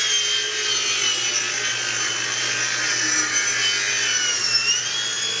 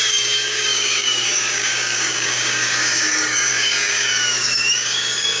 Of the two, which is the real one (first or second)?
first